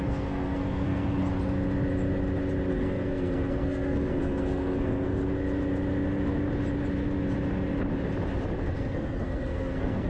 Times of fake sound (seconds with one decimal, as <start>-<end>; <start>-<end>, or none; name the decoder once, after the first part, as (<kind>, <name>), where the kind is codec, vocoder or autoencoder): 0.0-1.2 (codec, SNAC); 2.7-5.2; 8.6-10.1